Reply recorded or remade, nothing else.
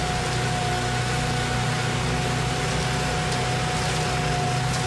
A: recorded